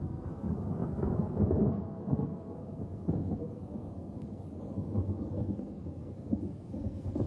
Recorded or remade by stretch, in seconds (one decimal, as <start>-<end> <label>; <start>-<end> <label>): 0.0-7.3 remade